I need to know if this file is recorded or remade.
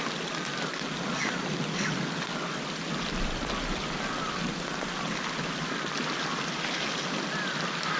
recorded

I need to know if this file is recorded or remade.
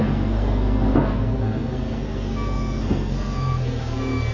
remade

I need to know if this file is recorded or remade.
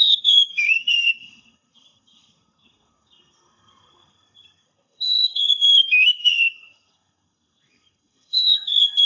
remade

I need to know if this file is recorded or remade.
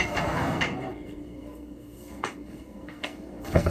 remade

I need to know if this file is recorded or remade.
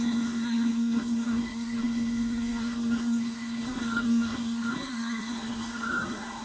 remade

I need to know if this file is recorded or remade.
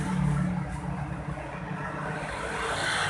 recorded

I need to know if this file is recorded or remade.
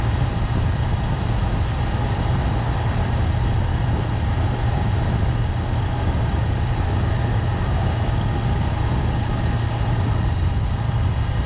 recorded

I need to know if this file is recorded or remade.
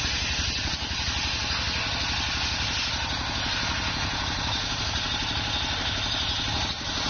recorded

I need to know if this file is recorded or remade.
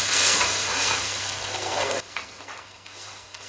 remade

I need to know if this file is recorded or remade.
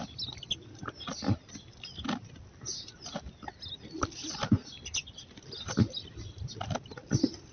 recorded